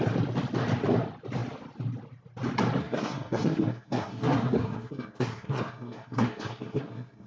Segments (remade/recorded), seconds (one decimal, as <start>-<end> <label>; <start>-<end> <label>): 0.0-2.8 recorded; 2.8-7.3 remade